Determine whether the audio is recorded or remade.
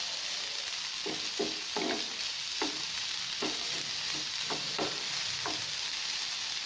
recorded